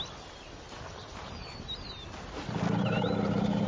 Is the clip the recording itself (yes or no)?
yes